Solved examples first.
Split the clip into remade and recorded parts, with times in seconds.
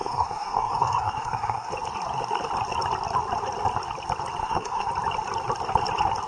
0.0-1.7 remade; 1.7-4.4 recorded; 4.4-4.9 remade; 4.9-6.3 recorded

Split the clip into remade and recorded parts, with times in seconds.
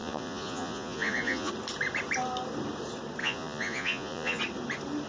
0.0-1.5 remade; 1.5-3.2 recorded; 3.2-4.4 remade; 4.4-5.1 recorded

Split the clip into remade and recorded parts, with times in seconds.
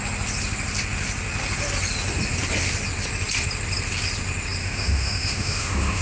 0.0-4.6 recorded; 4.6-6.0 remade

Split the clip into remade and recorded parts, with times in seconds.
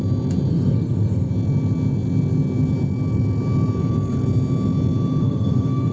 0.0-0.5 recorded; 0.5-1.3 remade; 1.3-5.2 recorded; 5.2-5.9 remade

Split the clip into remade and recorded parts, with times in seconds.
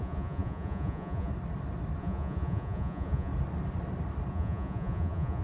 0.0-1.3 remade; 1.3-2.0 recorded; 2.0-3.3 remade; 3.3-4.3 recorded; 4.3-5.4 remade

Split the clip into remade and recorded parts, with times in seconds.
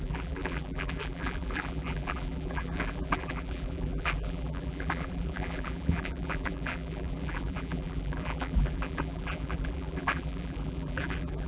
0.0-11.5 remade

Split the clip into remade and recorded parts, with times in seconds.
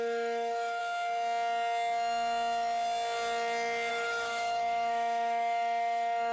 0.0-0.8 remade; 0.8-3.9 recorded; 3.9-6.3 remade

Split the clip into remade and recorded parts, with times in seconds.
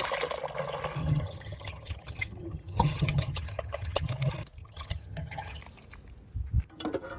0.0-1.0 recorded; 1.0-4.1 remade; 4.1-4.6 recorded; 4.6-5.6 remade; 5.6-7.2 recorded